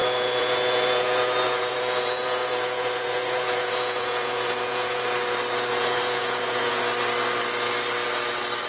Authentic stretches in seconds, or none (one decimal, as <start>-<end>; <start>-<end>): 5.0-5.7; 6.8-8.7